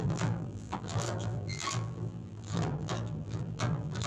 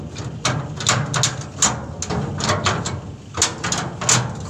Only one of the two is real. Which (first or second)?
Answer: second